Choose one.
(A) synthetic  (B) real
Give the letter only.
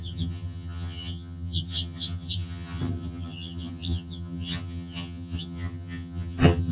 A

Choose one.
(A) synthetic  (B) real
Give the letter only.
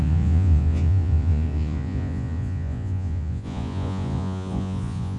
A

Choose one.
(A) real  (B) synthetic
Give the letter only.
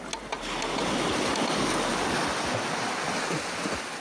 A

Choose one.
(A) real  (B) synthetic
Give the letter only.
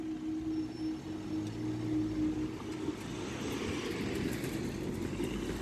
A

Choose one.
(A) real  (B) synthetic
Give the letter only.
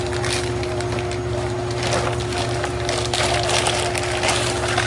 A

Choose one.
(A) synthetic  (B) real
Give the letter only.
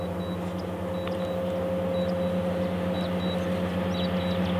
B